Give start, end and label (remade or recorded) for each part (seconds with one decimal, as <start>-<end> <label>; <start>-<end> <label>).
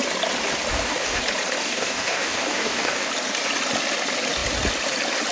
0.0-0.7 recorded; 0.7-1.2 remade; 1.2-1.6 recorded; 1.6-3.1 remade; 3.1-5.3 recorded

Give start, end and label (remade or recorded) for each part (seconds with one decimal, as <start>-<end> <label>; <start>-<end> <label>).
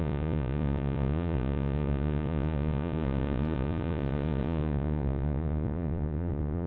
0.0-6.7 remade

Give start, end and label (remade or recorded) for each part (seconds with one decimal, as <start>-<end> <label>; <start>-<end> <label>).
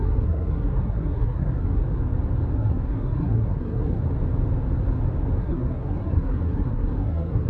0.0-1.8 remade; 1.8-2.5 recorded; 2.5-4.0 remade; 4.0-5.4 recorded; 5.4-7.5 remade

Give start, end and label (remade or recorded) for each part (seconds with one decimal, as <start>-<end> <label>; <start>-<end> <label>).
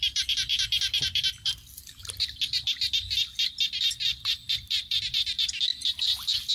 0.0-6.5 remade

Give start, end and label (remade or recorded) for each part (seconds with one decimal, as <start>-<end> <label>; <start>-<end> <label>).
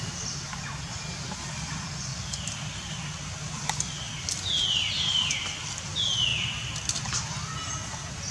0.0-8.3 recorded